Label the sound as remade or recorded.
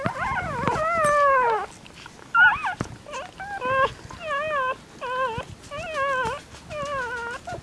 recorded